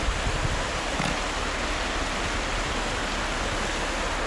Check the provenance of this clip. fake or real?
real